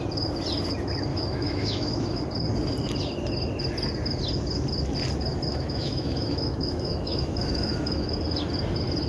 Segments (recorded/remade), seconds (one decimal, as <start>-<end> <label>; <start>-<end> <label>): 0.0-1.1 recorded; 1.1-2.2 remade; 2.2-5.5 recorded; 5.5-8.1 remade; 8.1-9.1 recorded